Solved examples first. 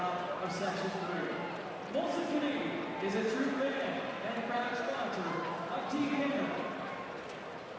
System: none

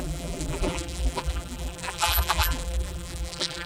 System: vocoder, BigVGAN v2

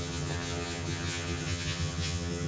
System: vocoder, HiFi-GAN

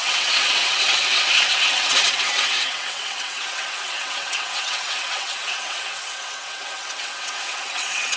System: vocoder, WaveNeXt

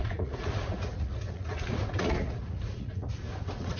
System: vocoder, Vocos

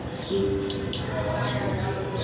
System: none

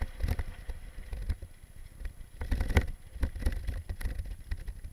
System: none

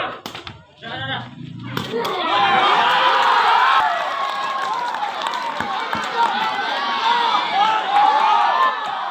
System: vocoder, BigVGAN v2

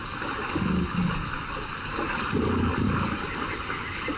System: codec, DAC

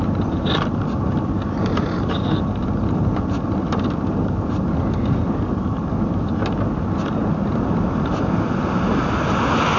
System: none